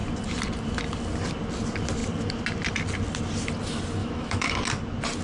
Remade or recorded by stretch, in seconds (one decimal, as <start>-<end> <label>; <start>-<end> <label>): 0.0-4.0 recorded; 4.0-4.6 remade; 4.6-5.2 recorded